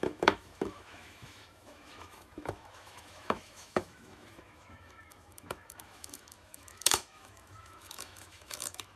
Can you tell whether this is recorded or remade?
remade